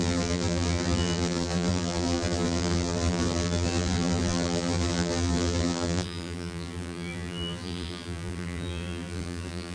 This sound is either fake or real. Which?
fake